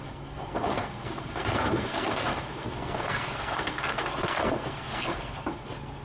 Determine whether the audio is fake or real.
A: fake